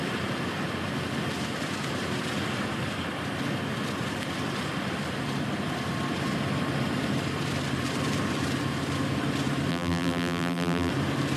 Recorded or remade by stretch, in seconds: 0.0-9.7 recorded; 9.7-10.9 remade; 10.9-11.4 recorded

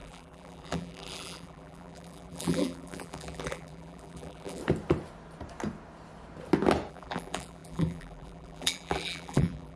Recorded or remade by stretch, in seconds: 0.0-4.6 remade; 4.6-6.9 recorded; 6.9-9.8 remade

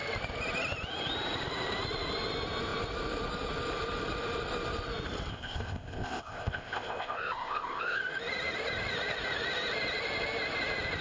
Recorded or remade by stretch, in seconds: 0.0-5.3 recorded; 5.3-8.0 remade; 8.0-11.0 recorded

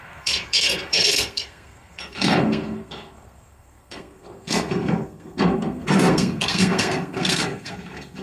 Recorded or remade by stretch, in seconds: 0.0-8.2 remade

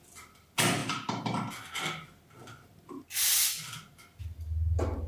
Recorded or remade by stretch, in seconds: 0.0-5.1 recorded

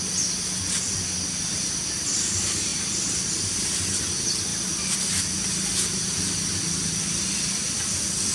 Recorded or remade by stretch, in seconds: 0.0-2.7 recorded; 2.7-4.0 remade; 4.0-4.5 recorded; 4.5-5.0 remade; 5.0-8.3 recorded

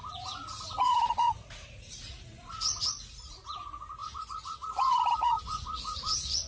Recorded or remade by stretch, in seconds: 0.0-6.5 remade

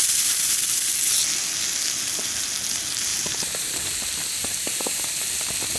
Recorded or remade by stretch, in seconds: 0.0-3.1 recorded; 3.1-3.9 remade; 3.9-4.4 recorded; 4.4-5.3 remade; 5.3-5.8 recorded